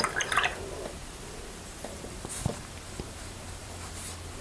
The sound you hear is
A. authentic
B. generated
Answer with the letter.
B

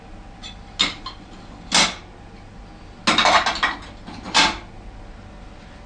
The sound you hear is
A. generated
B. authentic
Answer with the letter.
B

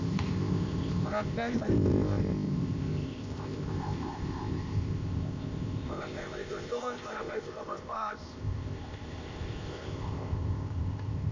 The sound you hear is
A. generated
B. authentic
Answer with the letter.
A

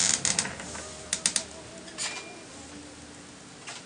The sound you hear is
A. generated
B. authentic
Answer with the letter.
B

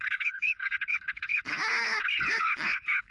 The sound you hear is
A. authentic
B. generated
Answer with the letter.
B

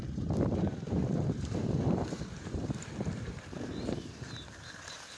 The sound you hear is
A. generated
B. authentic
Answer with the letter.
A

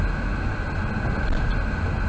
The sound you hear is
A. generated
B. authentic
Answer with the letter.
B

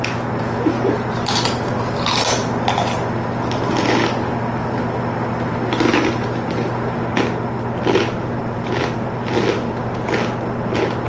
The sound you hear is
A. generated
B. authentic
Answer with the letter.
B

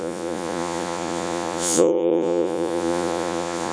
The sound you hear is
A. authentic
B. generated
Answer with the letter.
B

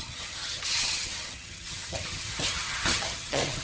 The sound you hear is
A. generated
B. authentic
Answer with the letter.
A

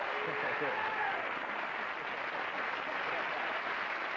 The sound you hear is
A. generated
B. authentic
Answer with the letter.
B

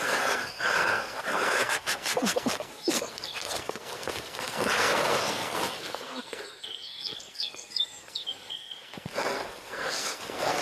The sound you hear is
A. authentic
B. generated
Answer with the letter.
B